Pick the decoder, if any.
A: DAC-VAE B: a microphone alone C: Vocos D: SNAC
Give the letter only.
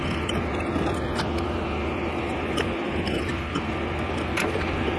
B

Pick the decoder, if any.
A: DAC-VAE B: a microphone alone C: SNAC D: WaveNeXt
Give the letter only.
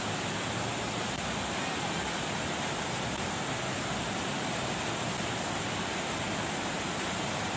B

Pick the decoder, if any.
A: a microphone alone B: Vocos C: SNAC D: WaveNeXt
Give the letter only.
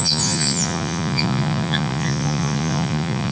B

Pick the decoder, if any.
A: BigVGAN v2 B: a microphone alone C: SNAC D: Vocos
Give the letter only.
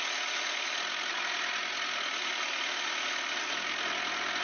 B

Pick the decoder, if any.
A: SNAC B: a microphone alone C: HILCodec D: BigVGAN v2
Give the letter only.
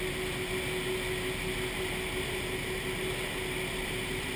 B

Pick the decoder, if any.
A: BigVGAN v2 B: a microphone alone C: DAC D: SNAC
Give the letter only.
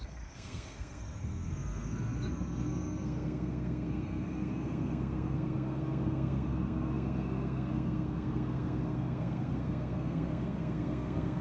D